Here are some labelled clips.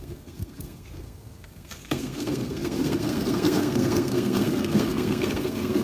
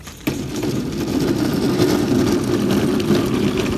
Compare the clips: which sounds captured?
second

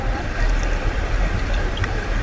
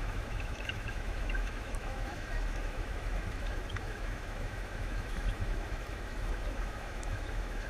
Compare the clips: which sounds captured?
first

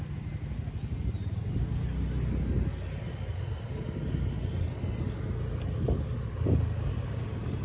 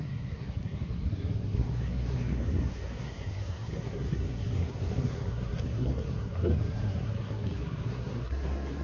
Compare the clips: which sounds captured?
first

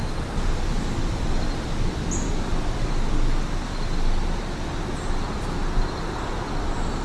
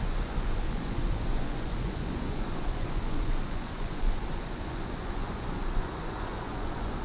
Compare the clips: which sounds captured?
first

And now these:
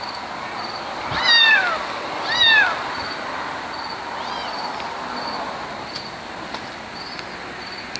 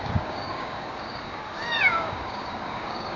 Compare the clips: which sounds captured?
first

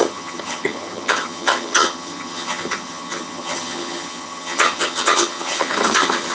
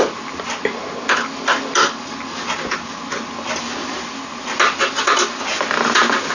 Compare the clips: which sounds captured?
second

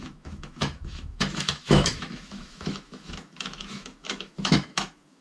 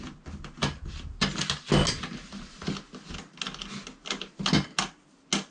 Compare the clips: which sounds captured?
second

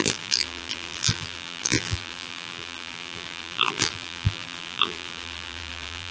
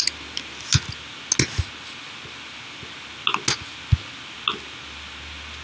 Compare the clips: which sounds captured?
second